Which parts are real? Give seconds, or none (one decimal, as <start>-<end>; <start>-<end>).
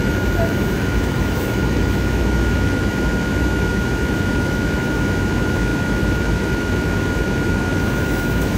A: none